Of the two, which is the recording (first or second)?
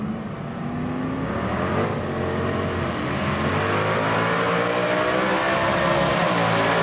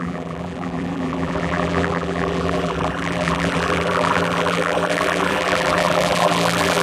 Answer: first